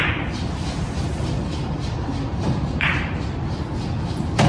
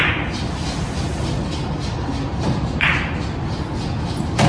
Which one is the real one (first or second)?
second